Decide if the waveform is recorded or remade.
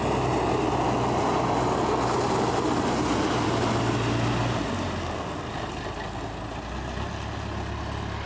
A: recorded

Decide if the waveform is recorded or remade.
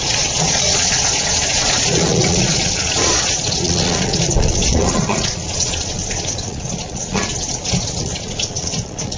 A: remade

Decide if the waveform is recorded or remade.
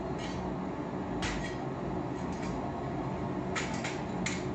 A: recorded